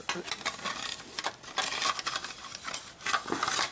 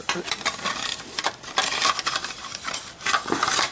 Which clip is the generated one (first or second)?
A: second